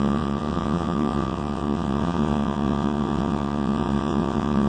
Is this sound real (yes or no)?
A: no